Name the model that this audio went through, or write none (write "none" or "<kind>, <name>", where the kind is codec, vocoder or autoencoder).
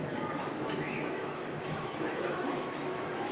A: autoencoder, DAC-VAE